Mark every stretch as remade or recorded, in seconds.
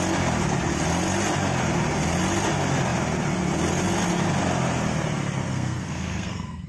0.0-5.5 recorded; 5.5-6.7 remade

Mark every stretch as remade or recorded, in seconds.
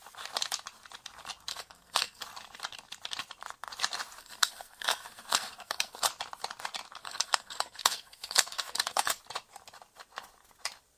0.0-1.5 recorded; 1.5-2.2 remade; 2.2-4.2 recorded; 4.2-6.1 remade; 6.1-7.0 recorded; 7.0-9.2 remade; 9.2-11.0 recorded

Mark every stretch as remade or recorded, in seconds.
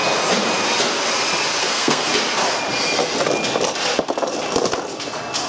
0.0-1.6 recorded; 1.6-2.1 remade; 2.1-5.5 recorded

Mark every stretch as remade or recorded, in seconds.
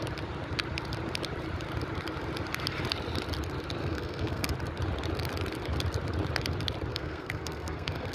0.0-3.8 recorded; 3.8-4.5 remade; 4.5-6.9 recorded; 6.9-8.1 remade